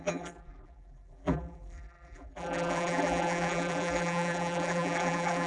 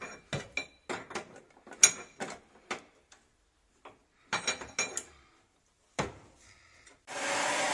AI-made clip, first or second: first